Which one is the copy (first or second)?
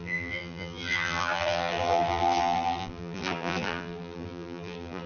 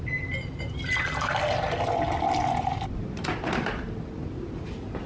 first